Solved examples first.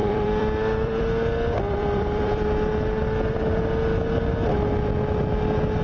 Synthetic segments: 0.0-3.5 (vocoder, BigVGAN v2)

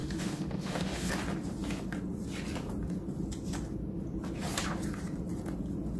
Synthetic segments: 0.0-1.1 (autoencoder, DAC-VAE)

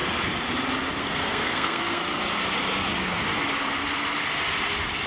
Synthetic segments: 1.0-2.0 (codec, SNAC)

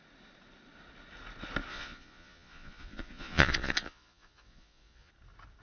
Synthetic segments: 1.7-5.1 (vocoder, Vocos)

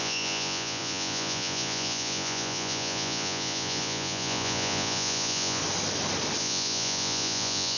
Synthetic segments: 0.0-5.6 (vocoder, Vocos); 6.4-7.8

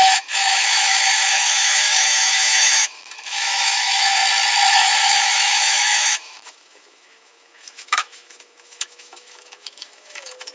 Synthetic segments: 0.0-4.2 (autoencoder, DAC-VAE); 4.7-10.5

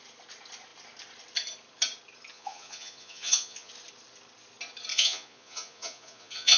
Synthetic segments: 2.3-3.7 (vocoder, Vocos); 4.9-6.6

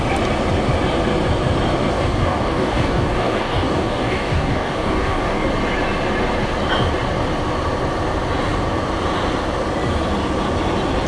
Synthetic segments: 1.9-5.5 (codec, DAC)